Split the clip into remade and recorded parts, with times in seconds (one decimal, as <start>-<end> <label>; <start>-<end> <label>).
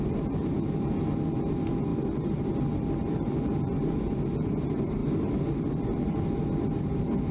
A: 0.0-7.3 recorded